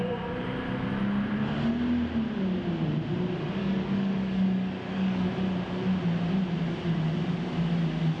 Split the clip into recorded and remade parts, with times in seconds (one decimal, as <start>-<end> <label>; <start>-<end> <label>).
0.0-3.6 recorded; 3.6-5.3 remade; 5.3-8.2 recorded